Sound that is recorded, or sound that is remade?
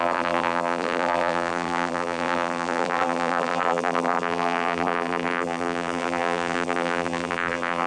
remade